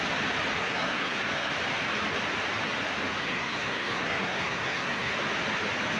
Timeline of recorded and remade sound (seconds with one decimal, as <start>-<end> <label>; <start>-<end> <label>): 0.0-0.6 recorded; 0.6-1.5 remade; 1.5-3.2 recorded; 3.2-5.1 remade; 5.1-6.0 recorded